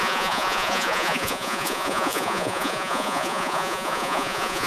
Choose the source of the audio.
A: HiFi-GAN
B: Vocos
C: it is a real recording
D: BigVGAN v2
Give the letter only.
B